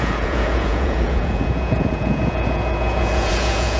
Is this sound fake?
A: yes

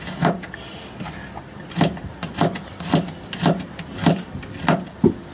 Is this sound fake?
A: no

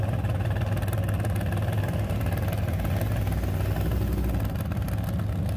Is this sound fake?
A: no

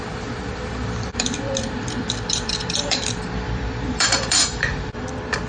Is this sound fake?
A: yes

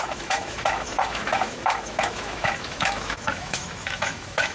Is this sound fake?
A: yes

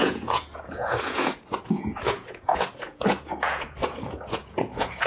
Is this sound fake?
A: yes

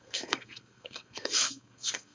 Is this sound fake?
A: yes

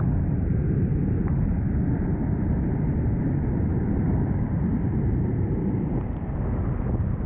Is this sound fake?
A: yes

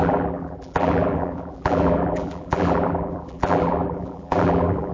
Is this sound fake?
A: yes